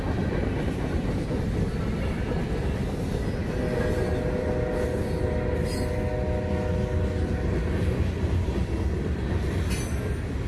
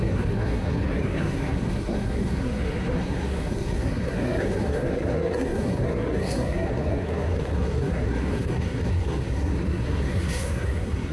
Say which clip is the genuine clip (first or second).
first